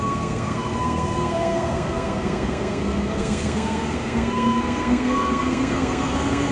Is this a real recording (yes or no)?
no